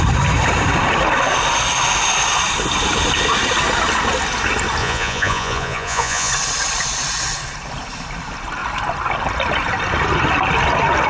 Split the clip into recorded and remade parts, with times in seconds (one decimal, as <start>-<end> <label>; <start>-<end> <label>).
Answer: 0.0-4.8 recorded; 4.8-6.3 remade; 6.3-11.1 recorded